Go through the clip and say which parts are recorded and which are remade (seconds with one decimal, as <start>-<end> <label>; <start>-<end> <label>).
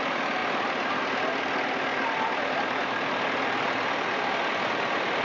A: 0.0-0.4 remade; 0.4-1.0 recorded; 1.0-5.2 remade